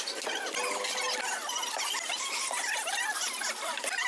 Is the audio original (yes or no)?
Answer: yes